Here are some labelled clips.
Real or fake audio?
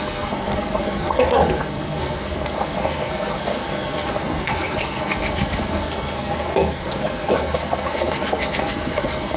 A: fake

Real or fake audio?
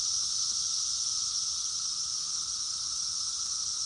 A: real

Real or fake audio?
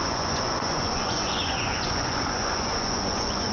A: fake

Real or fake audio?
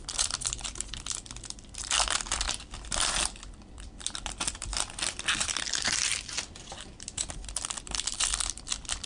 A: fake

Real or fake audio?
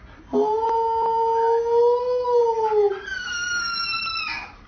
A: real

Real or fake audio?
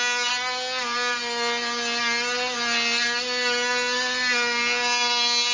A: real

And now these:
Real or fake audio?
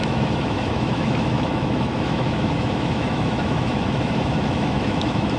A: fake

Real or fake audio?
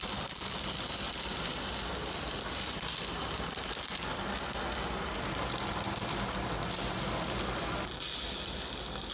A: real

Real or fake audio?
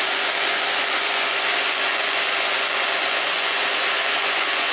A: fake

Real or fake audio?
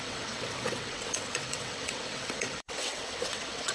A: fake